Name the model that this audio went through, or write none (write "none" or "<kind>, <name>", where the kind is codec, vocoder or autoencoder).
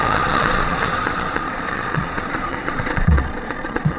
vocoder, Vocos